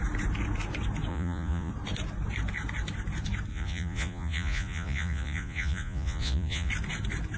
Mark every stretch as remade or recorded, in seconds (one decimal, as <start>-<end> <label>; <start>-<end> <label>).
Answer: 0.0-1.1 recorded; 1.1-1.7 remade; 1.7-3.5 recorded; 3.5-6.7 remade; 6.7-7.4 recorded